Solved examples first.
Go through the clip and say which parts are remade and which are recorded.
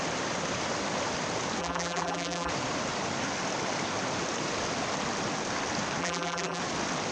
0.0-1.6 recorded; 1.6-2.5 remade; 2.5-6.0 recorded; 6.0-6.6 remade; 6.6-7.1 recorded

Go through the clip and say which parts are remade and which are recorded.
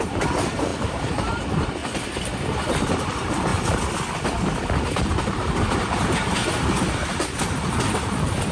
0.0-1.8 remade; 1.8-2.5 recorded; 2.5-3.5 remade; 3.5-4.6 recorded; 4.6-6.4 remade; 6.4-7.0 recorded; 7.0-8.5 remade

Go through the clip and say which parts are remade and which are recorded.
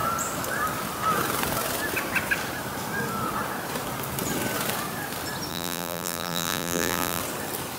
0.0-5.5 recorded; 5.5-7.2 remade; 7.2-7.8 recorded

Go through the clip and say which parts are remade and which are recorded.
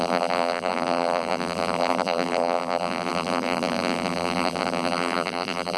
0.0-5.8 remade